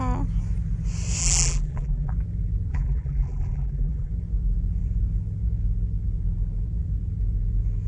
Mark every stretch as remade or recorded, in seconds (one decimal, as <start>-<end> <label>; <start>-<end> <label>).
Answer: 0.0-1.2 recorded; 1.2-2.1 remade; 2.1-2.7 recorded; 2.7-4.1 remade; 4.1-7.9 recorded